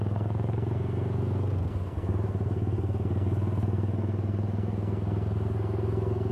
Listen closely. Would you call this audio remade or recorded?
remade